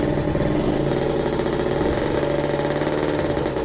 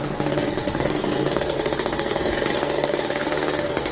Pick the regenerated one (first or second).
second